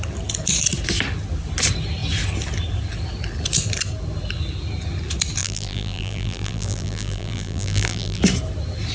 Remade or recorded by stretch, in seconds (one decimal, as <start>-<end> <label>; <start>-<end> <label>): 0.0-5.4 recorded; 5.4-8.2 remade; 8.2-8.9 recorded